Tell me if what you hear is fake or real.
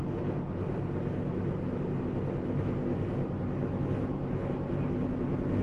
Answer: real